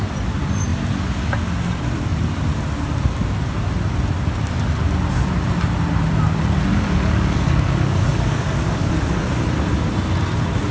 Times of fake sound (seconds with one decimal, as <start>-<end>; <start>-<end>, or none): 6.7-8.9